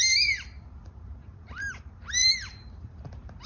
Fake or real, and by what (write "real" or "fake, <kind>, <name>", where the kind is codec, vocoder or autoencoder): fake, vocoder, BigVGAN v2